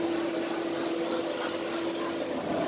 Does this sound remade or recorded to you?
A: recorded